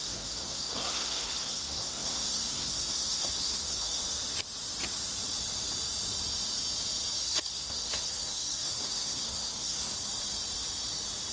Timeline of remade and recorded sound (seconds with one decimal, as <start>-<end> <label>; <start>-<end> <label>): 0.0-4.0 remade; 4.0-7.2 recorded; 7.2-9.9 remade; 9.9-11.3 recorded